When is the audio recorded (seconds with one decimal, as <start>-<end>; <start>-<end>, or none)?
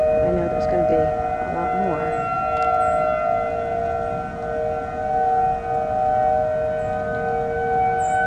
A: 0.0-8.3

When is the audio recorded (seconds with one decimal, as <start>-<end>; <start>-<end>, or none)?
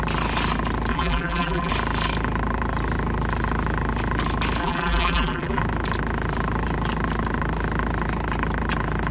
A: 0.0-0.9; 1.7-4.6; 5.6-9.1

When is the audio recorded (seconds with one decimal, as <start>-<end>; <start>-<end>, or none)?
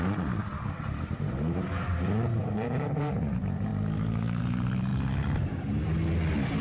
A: 0.4-1.0; 1.9-2.4; 4.9-6.6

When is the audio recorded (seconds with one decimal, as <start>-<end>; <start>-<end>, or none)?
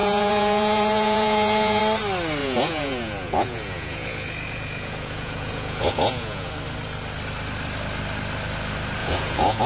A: 1.8-2.4; 6.5-9.0